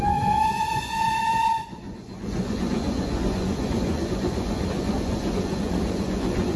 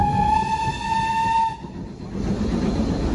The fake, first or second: first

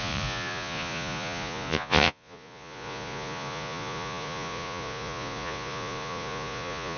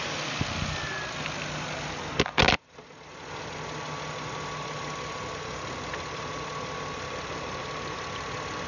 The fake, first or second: first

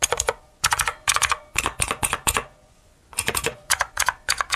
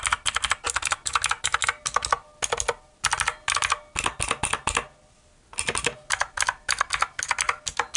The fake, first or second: first